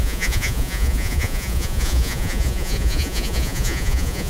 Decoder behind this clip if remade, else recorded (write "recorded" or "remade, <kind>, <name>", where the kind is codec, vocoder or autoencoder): remade, vocoder, Vocos